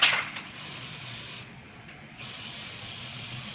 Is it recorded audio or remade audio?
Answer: remade